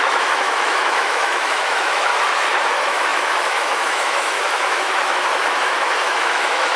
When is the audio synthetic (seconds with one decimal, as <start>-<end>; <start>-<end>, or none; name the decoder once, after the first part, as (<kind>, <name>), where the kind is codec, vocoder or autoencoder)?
0.0-2.1 (autoencoder, DAC-VAE); 2.7-6.8